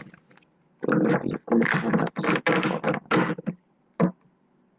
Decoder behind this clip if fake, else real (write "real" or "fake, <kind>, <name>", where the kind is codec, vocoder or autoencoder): real